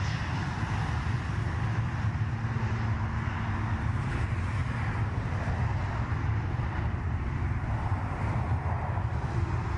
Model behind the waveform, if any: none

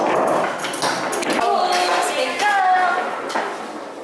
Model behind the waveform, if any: none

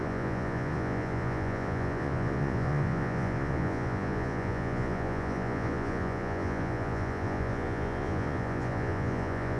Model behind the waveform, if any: vocoder, Vocos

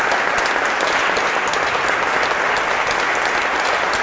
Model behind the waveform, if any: none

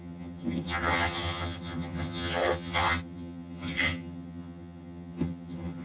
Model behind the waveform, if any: vocoder, HiFi-GAN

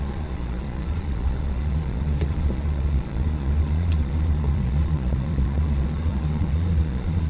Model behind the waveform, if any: vocoder, Vocos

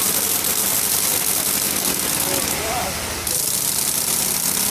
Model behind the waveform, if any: none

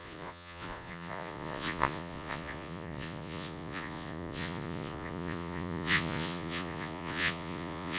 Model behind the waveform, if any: vocoder, Vocos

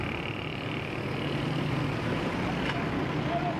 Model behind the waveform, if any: none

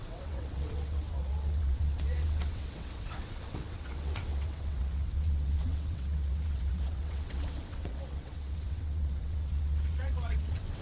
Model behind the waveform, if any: vocoder, WaveNeXt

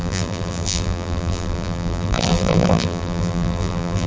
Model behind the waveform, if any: vocoder, BigVGAN v2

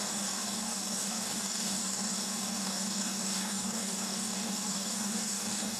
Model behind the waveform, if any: codec, DAC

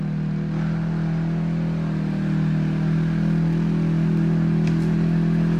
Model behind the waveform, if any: none